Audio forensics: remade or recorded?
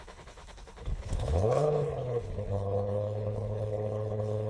remade